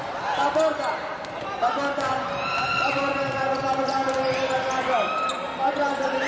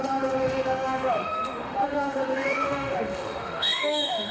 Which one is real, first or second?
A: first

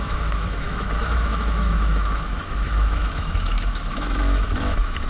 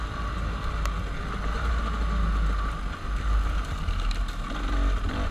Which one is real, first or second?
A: second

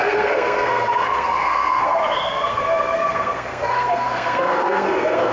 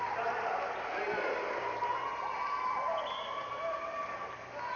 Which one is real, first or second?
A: second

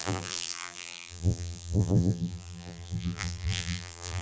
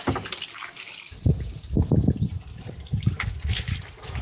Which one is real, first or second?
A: second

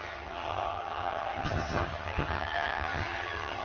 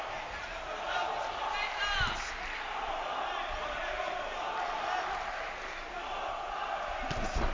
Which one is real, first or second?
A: second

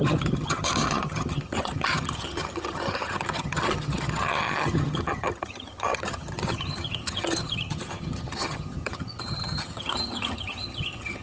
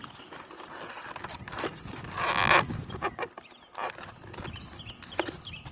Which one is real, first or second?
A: second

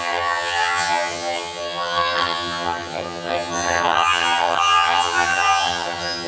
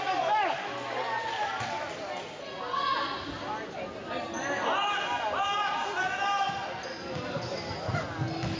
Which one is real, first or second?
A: second